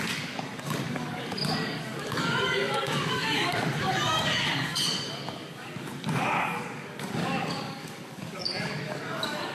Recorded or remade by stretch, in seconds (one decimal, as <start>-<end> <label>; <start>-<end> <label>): 0.0-9.5 remade